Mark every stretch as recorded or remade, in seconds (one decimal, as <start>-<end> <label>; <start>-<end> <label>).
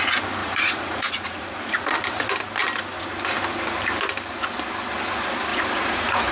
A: 0.0-0.4 recorded; 0.4-1.8 remade; 1.8-5.5 recorded; 5.5-6.3 remade